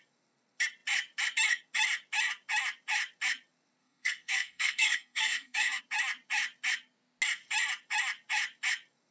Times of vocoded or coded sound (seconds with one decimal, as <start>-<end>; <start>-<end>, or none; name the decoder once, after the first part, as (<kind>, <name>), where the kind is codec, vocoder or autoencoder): 3.8-5.8 (codec, SNAC)